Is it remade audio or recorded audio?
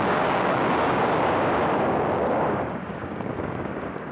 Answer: remade